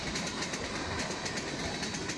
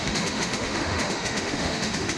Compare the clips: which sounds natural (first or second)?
first